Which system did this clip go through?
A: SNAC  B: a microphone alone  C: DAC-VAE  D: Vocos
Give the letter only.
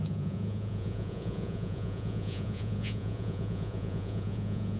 D